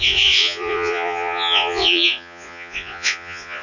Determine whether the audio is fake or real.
fake